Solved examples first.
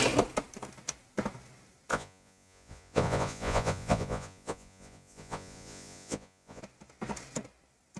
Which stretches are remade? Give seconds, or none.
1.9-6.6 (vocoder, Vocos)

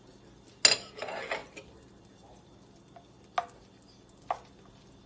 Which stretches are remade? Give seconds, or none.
none

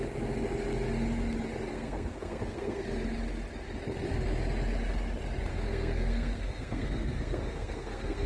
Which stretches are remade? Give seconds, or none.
1.7-2.9 (codec, SNAC); 5.5-8.3

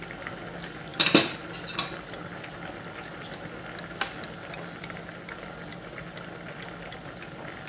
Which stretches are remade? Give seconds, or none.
none

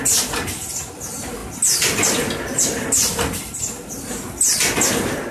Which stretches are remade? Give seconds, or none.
none